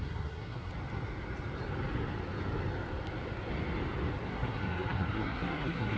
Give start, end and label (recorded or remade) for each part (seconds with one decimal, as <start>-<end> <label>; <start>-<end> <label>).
0.0-0.7 remade; 0.7-4.3 recorded; 4.3-6.0 remade